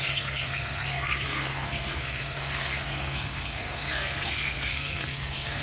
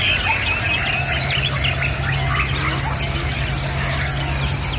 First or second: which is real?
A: second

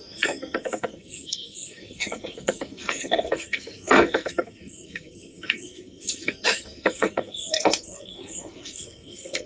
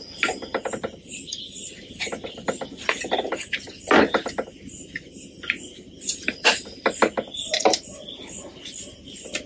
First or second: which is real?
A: second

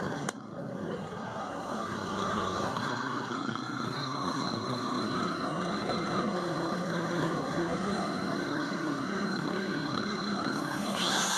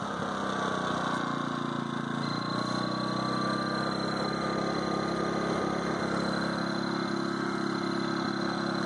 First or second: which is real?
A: second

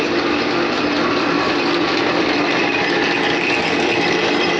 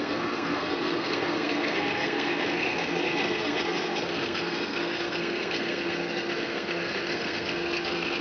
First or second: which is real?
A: first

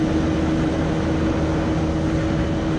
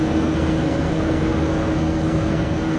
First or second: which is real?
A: first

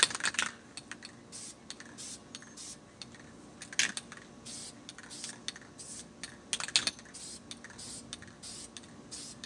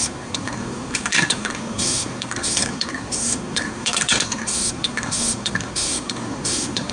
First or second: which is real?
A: first